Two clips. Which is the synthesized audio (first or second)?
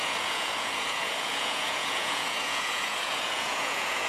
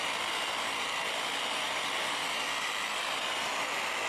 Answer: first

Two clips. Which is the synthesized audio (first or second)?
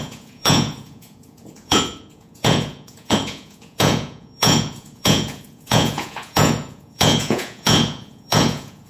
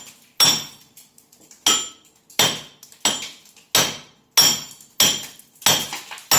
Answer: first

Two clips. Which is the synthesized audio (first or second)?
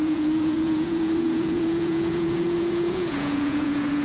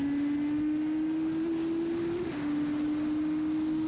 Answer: first